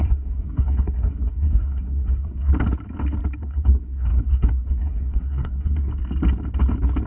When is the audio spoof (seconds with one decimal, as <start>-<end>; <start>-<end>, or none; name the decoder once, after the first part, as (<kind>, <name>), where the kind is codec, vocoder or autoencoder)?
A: 0.0-2.5 (codec, SNAC); 3.4-5.9